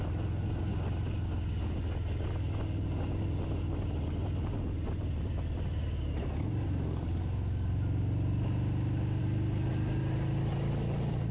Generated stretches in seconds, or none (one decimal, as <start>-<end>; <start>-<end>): none